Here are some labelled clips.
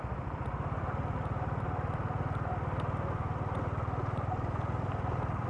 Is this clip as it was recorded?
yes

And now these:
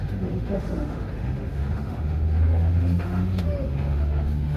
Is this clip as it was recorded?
no